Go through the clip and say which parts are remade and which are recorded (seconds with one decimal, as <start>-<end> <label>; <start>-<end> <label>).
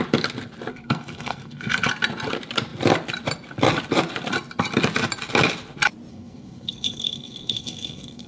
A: 0.0-0.7 recorded; 0.7-1.9 remade; 1.9-6.1 recorded; 6.1-8.3 remade